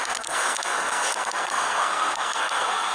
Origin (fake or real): fake